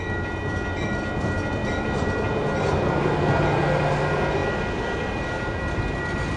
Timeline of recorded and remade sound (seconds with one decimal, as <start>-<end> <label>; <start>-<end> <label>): 0.0-6.4 recorded